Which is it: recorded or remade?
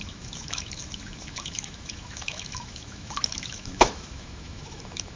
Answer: remade